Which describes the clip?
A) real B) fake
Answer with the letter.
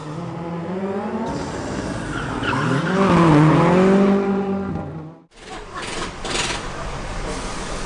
A